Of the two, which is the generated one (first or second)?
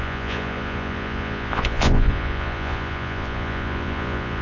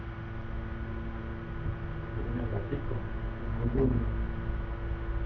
first